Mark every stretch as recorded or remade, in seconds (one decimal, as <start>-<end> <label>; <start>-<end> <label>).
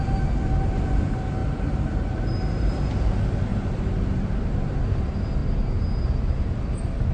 0.0-1.4 recorded; 1.4-2.7 remade; 2.7-3.5 recorded; 3.5-4.3 remade; 4.3-7.1 recorded